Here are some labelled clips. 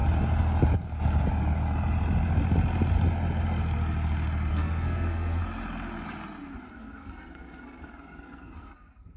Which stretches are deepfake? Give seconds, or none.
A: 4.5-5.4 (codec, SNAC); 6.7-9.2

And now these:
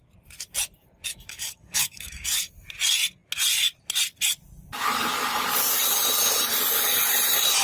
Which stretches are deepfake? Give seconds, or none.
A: 1.1-2.5 (codec, DAC)

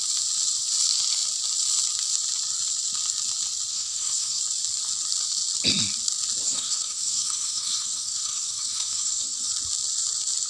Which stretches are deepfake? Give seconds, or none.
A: 3.7-4.4 (codec, SNAC); 6.5-9.5

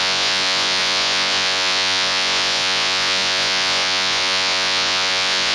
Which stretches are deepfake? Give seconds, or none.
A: 0.0-5.5 (vocoder, Vocos)

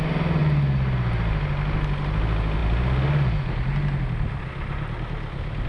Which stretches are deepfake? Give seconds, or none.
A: none

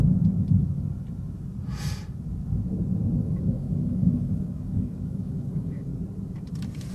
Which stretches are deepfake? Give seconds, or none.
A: 3.2-5.9 (codec, DAC)